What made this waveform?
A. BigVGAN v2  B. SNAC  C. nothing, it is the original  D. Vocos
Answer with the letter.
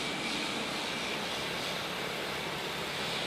C